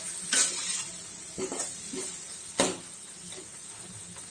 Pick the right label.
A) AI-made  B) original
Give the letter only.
B